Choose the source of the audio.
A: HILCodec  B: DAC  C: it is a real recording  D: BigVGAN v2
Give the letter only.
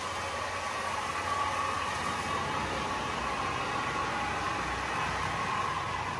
C